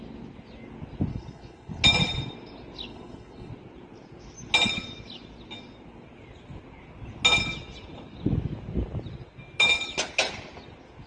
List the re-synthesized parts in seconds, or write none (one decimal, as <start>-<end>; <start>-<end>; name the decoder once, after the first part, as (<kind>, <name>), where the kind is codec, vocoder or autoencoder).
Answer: 1.1-1.8 (codec, HILCodec); 2.9-3.5